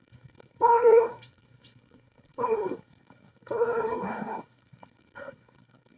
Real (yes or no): no